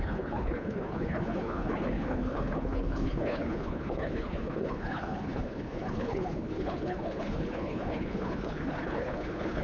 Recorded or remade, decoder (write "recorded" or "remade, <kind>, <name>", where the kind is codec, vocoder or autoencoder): remade, codec, HILCodec